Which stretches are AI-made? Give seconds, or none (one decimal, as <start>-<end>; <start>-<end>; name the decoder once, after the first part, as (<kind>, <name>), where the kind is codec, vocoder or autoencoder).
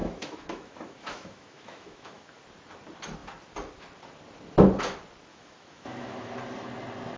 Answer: 0.0-2.4 (autoencoder, DAC-VAE); 5.3-6.3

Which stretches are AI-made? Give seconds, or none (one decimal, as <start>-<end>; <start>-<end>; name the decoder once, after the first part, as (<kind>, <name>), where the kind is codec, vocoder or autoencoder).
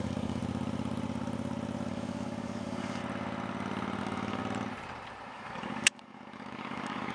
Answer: 0.0-0.4 (codec, DAC); 1.9-3.0; 4.0-4.4; 5.3-7.1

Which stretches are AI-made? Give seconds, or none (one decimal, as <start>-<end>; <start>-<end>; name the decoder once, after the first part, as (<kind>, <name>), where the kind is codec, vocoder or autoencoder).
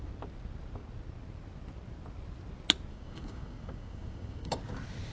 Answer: 2.9-4.6 (codec, DAC)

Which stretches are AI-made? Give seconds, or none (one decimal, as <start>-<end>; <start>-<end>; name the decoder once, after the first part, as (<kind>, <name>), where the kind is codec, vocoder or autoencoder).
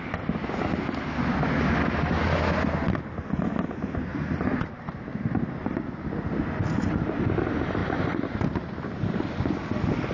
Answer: 4.1-4.6 (vocoder, BigVGAN v2); 5.1-5.8; 7.8-9.2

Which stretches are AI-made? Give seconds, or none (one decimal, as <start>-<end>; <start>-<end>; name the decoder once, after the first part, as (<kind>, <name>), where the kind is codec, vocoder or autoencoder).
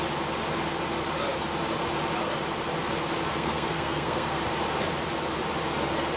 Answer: 3.3-4.4 (codec, SNAC)